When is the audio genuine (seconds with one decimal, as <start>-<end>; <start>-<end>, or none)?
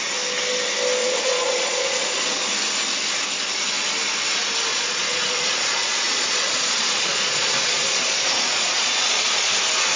0.0-1.0; 2.5-4.7; 9.5-10.0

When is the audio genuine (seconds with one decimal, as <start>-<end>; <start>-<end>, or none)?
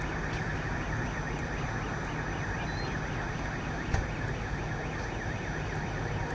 0.0-6.3